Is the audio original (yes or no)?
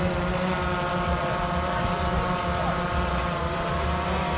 yes